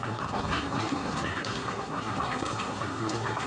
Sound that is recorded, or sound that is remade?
remade